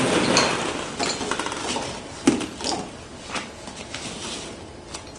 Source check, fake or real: real